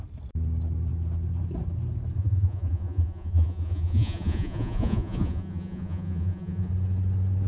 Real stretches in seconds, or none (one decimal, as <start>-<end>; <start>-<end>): 0.0-2.2; 6.7-7.5